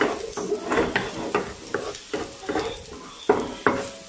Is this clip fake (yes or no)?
no